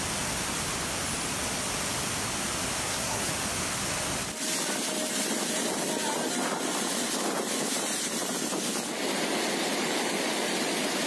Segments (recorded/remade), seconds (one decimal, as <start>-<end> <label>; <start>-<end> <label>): 0.0-2.8 recorded; 2.8-3.3 remade; 3.3-11.1 recorded